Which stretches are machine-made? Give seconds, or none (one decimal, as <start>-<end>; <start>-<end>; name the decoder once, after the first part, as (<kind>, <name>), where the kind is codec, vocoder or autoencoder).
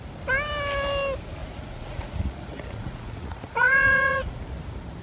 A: 1.4-4.4 (vocoder, Vocos)